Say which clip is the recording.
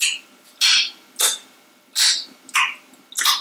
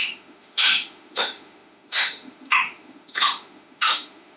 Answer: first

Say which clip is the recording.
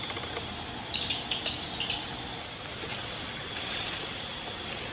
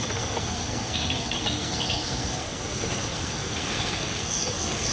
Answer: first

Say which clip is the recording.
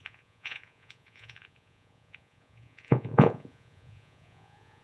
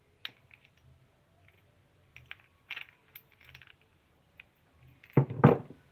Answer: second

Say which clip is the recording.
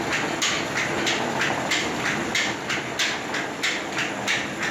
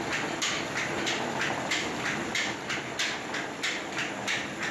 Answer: first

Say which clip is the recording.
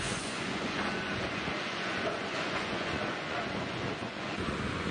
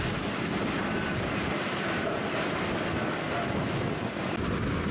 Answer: second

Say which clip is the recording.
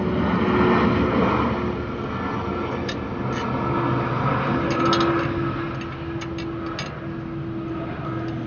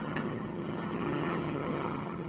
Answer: first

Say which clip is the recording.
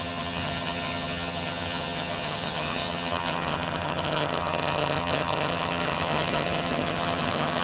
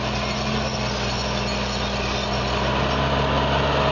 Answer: second